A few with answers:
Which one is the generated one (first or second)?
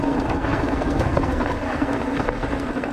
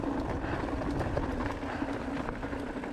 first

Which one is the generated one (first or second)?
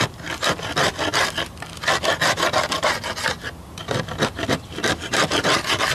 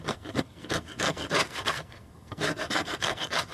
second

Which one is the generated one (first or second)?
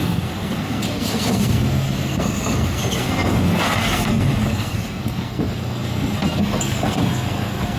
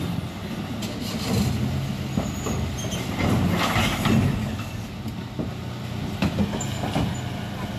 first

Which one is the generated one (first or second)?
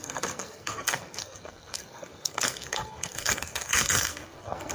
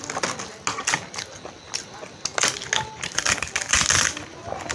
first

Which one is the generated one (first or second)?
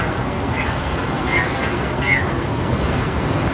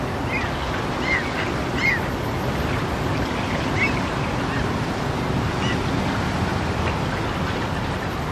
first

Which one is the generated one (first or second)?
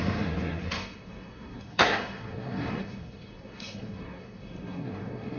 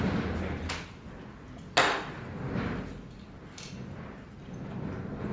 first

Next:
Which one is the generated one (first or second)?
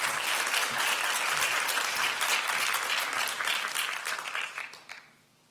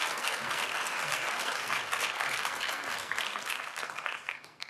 second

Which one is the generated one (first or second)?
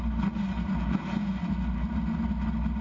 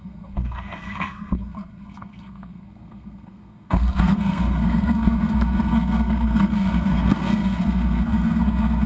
second